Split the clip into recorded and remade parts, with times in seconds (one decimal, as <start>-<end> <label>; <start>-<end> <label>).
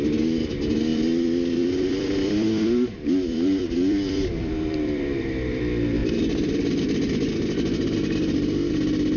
0.0-0.9 recorded; 0.9-5.6 remade; 5.6-6.0 recorded; 6.0-8.7 remade; 8.7-9.2 recorded